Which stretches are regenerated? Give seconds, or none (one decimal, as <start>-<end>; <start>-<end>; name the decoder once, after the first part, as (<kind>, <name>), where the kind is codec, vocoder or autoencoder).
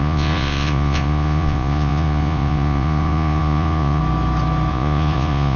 0.0-4.0 (vocoder, Vocos); 4.7-5.6